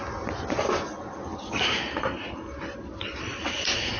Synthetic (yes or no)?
no